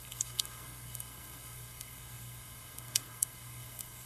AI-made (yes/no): yes